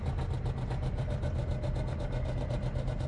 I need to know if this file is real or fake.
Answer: real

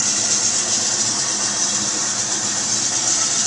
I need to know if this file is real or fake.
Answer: real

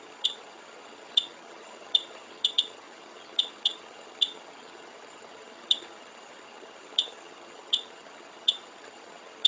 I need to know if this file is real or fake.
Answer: fake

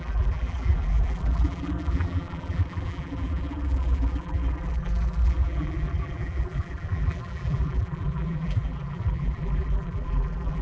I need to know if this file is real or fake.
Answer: fake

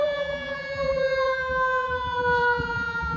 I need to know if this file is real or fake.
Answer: fake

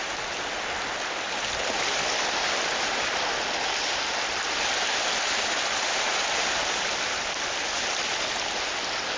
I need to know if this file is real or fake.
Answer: real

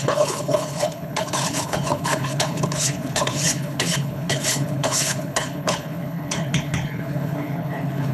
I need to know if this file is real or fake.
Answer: fake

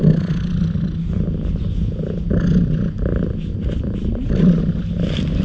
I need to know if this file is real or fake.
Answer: real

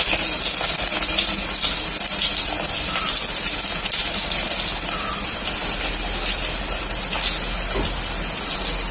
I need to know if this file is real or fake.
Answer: real